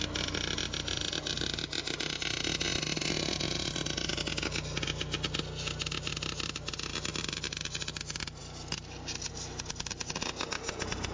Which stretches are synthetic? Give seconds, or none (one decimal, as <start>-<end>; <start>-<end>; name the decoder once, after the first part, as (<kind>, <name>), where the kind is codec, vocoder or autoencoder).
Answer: none